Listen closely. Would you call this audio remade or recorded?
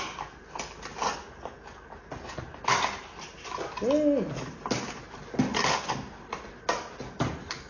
recorded